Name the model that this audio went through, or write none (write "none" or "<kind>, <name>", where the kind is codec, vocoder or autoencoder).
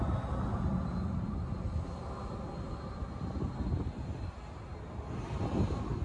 none